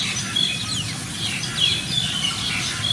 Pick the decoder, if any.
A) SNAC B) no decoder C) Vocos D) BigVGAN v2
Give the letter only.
B